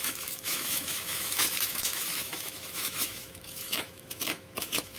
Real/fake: fake